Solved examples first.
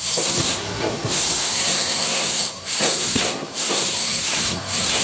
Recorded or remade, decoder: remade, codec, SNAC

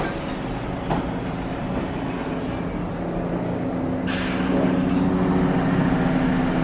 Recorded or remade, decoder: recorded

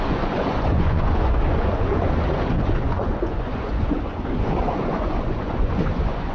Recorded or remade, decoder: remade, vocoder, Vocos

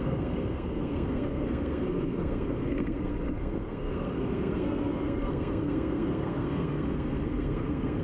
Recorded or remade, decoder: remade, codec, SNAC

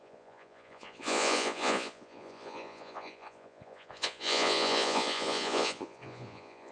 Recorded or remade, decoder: remade, vocoder, Vocos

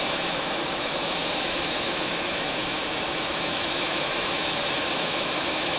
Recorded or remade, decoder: remade, autoencoder, DAC-VAE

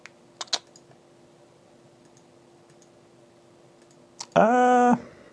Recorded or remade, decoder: recorded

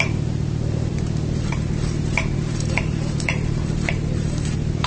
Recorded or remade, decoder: remade, vocoder, BigVGAN v2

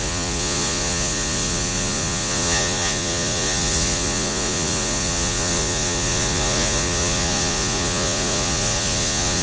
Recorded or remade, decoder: remade, vocoder, Vocos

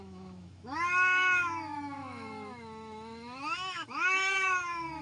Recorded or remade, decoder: remade, autoencoder, DAC-VAE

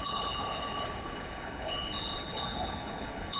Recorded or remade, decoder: remade, codec, HILCodec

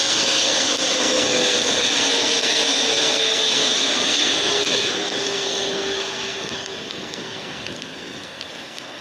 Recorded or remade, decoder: remade, codec, SNAC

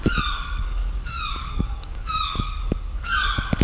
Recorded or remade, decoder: remade, codec, DAC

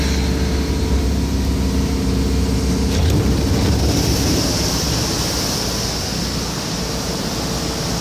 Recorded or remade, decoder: recorded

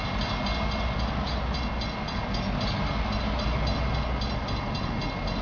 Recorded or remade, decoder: recorded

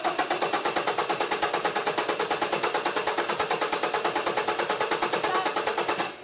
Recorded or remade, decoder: recorded